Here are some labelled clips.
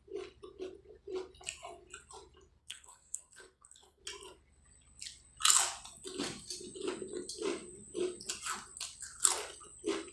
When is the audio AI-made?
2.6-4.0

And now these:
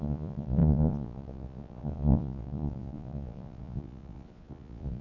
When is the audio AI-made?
0.0-5.0